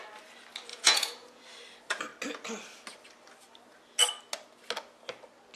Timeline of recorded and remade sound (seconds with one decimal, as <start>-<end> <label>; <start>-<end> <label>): 0.0-0.7 recorded; 0.7-1.4 remade; 1.4-5.6 recorded